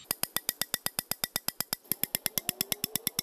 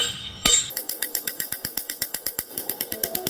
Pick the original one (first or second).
first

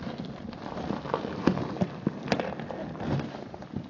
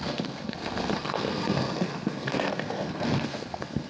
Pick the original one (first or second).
first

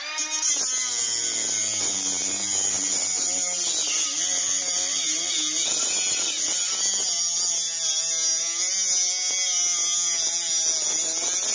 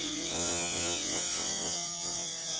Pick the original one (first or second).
first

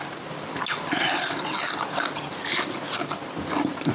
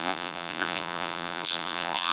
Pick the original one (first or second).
first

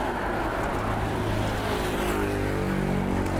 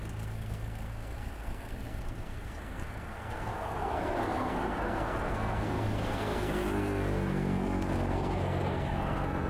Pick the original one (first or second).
first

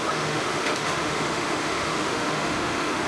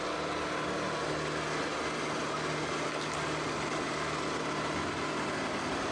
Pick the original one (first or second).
second